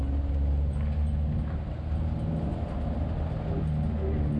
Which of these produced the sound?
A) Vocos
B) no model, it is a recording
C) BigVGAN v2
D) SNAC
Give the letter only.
B